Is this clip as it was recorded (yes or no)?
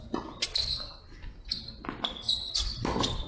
yes